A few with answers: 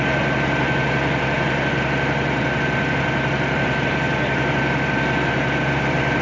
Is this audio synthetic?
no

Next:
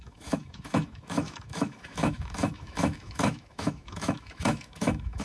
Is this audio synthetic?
yes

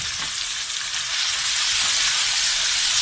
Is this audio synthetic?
no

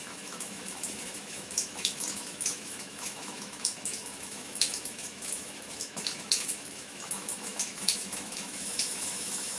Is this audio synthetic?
yes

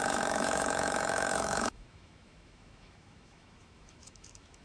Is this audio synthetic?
yes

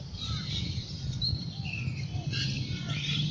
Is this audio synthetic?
no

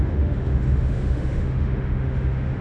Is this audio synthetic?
yes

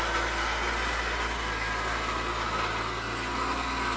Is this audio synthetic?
no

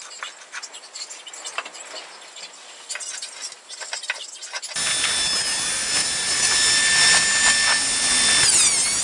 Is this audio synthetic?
no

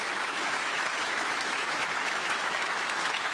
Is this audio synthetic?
yes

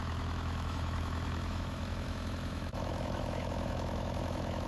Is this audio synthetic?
yes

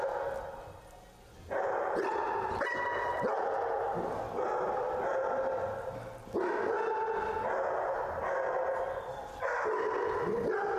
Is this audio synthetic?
no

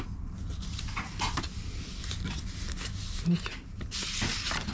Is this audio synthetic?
no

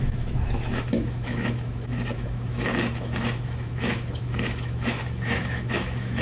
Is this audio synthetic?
yes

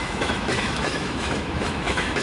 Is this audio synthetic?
yes